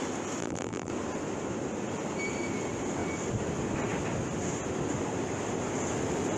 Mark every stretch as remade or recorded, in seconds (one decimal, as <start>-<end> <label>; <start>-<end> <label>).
0.0-0.4 recorded; 0.4-0.9 remade; 0.9-6.4 recorded